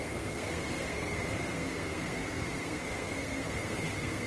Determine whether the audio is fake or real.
fake